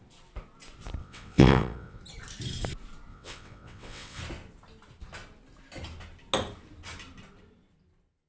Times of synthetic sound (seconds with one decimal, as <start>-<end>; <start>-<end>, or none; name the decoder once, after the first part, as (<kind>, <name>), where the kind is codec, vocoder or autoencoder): 1.0-2.0 (vocoder, WaveNeXt); 3.1-4.2

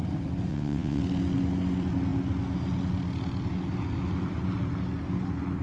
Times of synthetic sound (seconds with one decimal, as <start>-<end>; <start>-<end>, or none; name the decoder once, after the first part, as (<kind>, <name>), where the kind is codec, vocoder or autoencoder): 0.5-1.0 (vocoder, WaveNeXt)

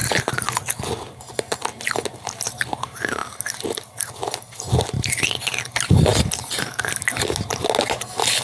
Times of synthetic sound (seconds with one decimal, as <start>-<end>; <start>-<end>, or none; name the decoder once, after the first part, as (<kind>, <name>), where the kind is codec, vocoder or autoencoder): none

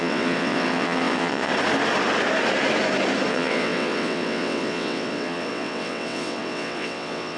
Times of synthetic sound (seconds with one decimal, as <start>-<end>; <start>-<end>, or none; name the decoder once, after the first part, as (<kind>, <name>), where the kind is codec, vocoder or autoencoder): 0.0-1.5 (vocoder, WaveNeXt); 3.3-7.4

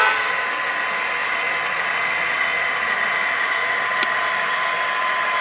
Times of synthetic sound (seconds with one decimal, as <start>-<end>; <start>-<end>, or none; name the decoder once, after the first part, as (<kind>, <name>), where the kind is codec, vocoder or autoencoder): none

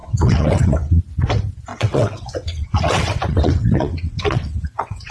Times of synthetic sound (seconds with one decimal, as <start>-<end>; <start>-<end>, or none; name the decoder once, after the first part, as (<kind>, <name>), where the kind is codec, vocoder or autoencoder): 0.0-1.0 (vocoder, WaveNeXt); 1.7-5.1

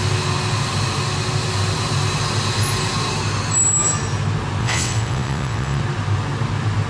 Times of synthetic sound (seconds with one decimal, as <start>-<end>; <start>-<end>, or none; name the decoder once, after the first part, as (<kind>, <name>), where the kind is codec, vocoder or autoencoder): 4.6-5.8 (vocoder, WaveNeXt)